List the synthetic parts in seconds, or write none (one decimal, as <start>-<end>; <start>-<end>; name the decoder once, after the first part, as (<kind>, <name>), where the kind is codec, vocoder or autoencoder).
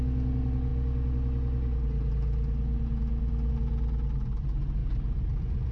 4.8-5.7 (vocoder, BigVGAN v2)